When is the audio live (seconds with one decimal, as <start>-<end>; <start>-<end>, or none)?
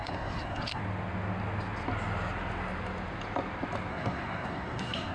0.8-3.9